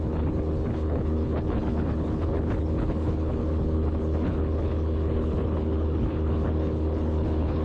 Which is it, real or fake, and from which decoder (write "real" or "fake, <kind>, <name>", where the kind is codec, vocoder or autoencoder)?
fake, codec, HILCodec